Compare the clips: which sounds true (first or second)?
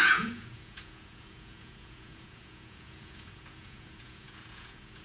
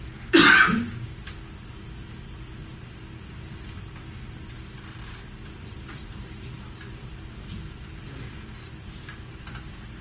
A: second